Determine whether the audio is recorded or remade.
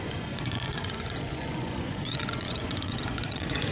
remade